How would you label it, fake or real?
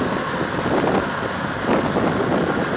real